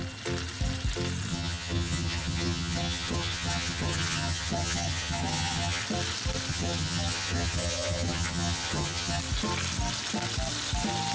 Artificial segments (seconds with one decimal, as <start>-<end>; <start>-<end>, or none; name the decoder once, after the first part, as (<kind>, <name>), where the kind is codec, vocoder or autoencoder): 1.3-5.8 (vocoder, HiFi-GAN); 6.5-9.2